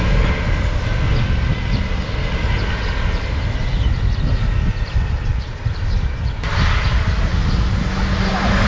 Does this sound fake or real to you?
real